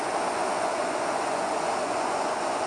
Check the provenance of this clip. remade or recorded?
remade